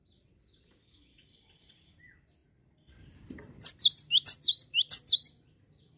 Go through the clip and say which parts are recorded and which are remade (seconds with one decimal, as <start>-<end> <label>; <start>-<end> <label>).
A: 0.0-6.0 remade